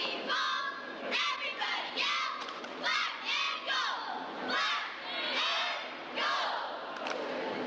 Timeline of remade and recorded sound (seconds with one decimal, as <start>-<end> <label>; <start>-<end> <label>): 0.0-1.5 recorded; 1.5-4.4 remade; 4.4-7.7 recorded